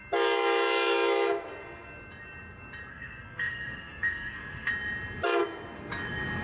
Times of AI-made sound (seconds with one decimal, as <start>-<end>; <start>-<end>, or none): 2.9-4.7